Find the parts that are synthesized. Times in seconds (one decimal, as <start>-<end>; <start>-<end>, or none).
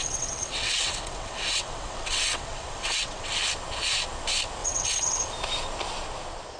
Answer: 0.0-3.3; 4.6-5.2